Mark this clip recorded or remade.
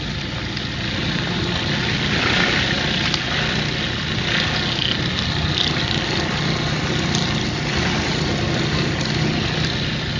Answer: recorded